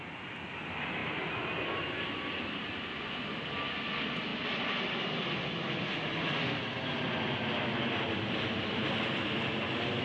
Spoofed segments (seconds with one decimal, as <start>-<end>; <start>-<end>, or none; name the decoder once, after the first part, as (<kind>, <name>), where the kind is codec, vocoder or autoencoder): none